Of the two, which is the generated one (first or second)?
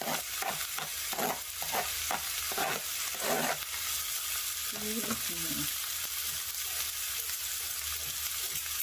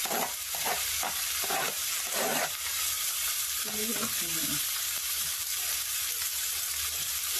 second